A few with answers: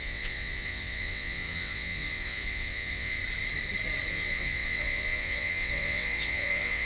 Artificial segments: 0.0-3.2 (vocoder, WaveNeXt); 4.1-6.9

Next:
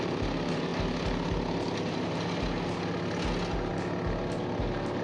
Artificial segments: none